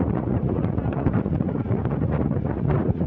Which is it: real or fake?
fake